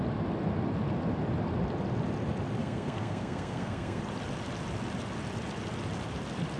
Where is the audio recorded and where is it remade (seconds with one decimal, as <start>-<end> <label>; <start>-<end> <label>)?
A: 0.0-2.6 recorded; 2.6-4.0 remade; 4.0-6.6 recorded